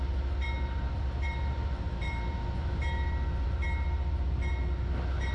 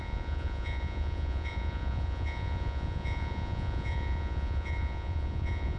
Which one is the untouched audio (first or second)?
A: first